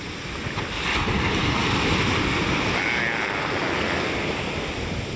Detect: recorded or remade recorded